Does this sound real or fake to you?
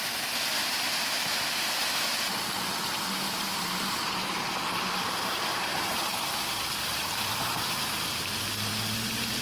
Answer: fake